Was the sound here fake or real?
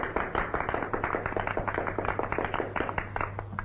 real